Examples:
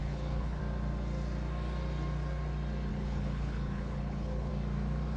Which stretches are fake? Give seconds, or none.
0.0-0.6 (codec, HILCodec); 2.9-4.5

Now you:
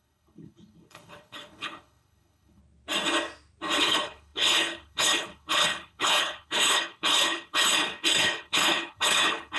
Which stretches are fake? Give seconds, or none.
0.0-2.6 (codec, HILCodec); 3.8-9.6

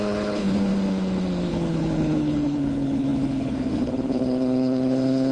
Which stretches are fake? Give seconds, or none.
0.0-0.7 (codec, HILCodec); 1.5-5.3

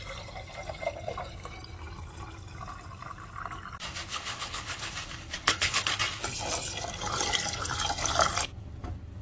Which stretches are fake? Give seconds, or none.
4.1-4.9 (codec, HILCodec); 5.4-6.0

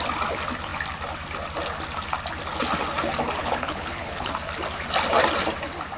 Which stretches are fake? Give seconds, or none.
3.4-4.3 (codec, HILCodec)

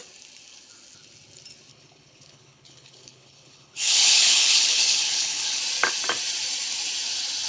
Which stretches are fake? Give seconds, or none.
1.7-5.6 (codec, HILCodec)

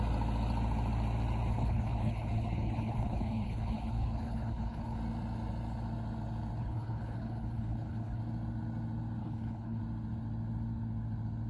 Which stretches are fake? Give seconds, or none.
1.5-5.0 (codec, HILCodec); 6.6-8.2; 9.2-9.8

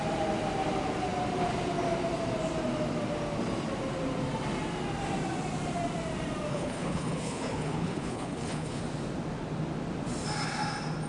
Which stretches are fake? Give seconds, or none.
6.5-8.8 (codec, HILCodec)